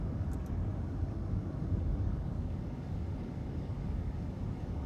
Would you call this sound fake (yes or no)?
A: yes